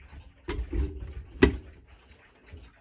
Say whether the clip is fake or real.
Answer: real